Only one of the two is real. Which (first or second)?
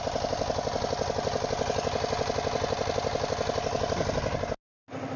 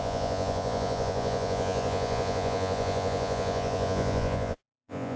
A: first